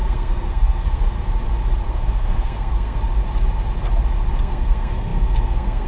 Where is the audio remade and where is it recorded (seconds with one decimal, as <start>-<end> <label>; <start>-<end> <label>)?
0.0-1.1 remade; 1.1-1.9 recorded; 1.9-3.0 remade; 3.0-4.4 recorded; 4.4-5.9 remade